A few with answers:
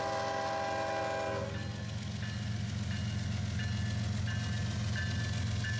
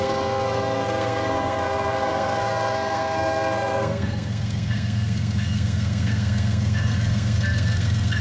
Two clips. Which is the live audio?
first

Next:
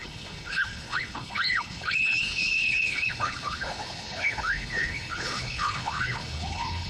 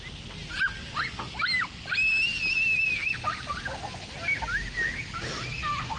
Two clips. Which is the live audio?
second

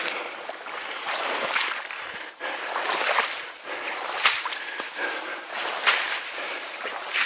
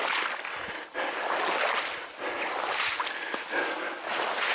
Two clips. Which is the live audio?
second